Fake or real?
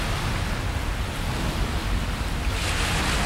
real